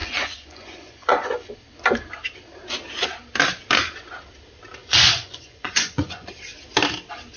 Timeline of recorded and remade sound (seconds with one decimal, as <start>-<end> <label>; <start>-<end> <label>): 0.0-1.5 remade; 1.5-4.8 recorded; 4.8-6.3 remade; 6.3-7.4 recorded